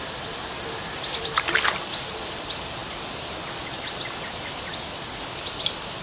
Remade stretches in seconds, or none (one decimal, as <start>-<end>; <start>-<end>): none